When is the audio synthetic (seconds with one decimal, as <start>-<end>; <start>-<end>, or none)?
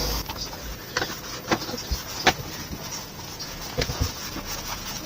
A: 3.1-5.1